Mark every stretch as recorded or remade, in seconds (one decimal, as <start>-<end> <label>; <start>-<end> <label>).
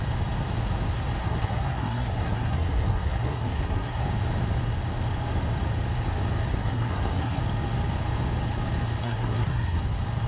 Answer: 0.0-1.2 recorded; 1.2-4.0 remade; 4.0-6.5 recorded; 6.5-7.4 remade; 7.4-9.0 recorded; 9.0-9.8 remade; 9.8-10.3 recorded